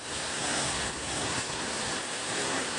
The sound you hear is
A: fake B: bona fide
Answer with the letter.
A